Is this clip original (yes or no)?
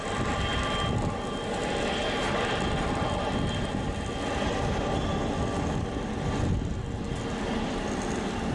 yes